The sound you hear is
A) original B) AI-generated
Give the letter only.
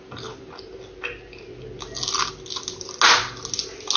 A